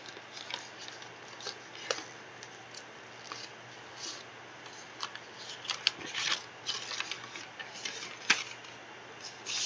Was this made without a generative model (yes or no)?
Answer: yes